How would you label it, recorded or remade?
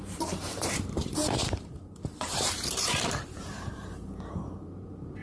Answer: remade